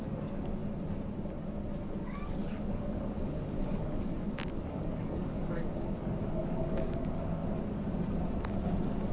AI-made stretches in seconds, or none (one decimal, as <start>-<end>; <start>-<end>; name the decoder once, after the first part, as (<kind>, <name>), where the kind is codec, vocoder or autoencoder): 0.0-0.6 (codec, DAC); 1.8-7.4